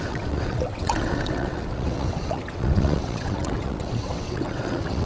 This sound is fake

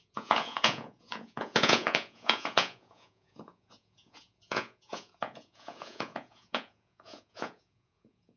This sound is fake